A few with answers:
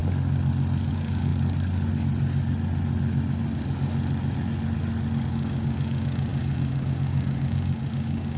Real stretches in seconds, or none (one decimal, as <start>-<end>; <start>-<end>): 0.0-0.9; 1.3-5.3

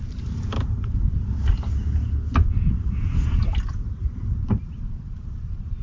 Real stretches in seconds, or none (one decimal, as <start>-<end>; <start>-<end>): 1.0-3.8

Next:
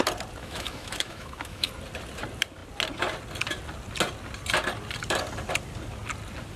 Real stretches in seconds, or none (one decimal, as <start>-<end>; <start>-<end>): 0.0-0.4; 1.7-6.6

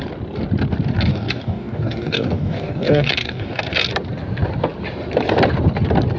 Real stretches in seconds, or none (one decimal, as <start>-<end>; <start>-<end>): 0.0-1.1; 3.6-6.2

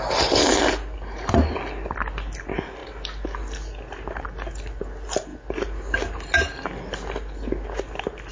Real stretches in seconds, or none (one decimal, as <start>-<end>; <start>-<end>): 0.0-8.3

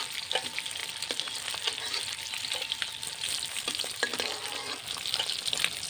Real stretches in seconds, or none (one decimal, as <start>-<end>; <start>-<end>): 0.0-5.9

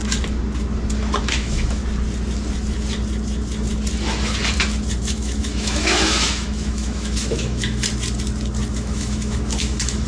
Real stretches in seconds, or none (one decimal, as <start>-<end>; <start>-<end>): 0.0-1.2; 1.8-5.0; 7.8-8.7